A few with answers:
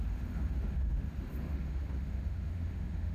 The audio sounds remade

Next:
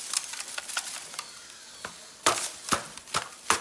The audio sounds recorded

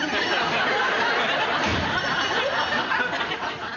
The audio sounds recorded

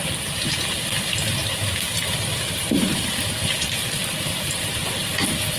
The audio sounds remade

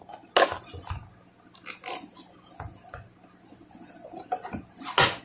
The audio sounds recorded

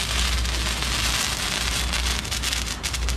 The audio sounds recorded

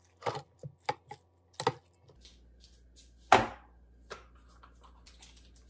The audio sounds recorded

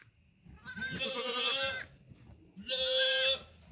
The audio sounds recorded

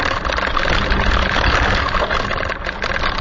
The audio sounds recorded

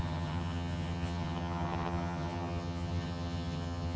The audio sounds remade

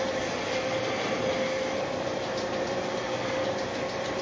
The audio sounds recorded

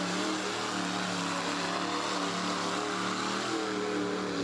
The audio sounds recorded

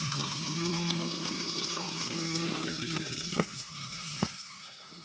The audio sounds remade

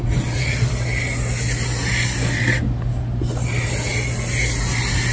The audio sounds recorded